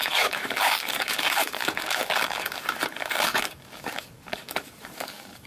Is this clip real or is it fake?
fake